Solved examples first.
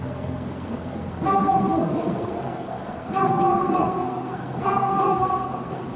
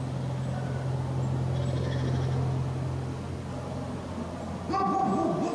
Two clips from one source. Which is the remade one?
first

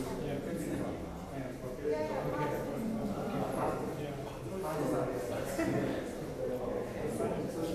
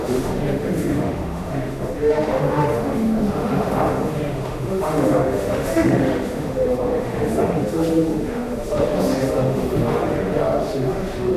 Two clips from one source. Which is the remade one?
second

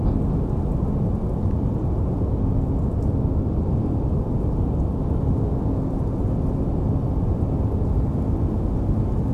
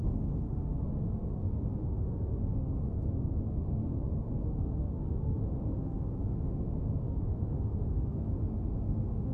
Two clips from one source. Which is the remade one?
second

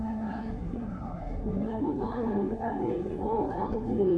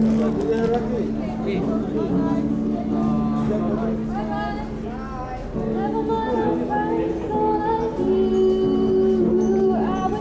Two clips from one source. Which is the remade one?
first